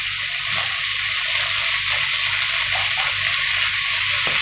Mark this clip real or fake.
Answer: real